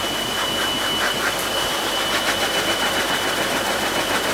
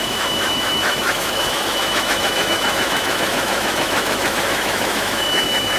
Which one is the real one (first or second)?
first